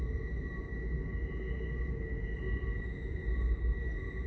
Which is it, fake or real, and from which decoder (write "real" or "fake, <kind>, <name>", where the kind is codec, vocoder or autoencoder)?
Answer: real